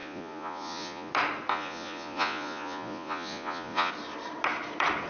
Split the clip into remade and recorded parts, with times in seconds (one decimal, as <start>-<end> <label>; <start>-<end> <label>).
0.0-1.1 remade; 1.1-1.5 recorded; 1.5-3.9 remade; 3.9-5.1 recorded